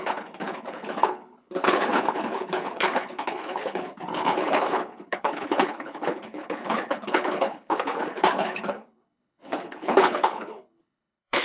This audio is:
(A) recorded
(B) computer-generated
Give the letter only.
B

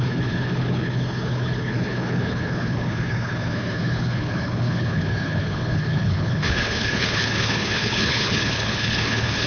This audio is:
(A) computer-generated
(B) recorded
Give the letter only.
A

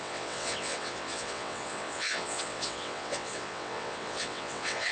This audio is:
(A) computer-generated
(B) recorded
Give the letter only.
A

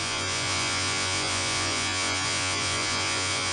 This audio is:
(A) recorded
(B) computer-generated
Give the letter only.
B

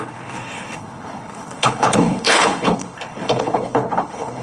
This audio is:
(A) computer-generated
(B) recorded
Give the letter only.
A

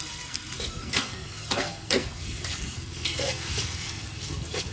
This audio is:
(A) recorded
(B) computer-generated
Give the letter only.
B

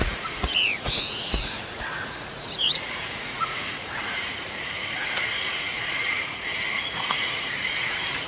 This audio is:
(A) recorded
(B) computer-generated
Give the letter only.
B